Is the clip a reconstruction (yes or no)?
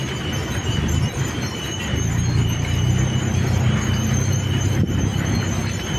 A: no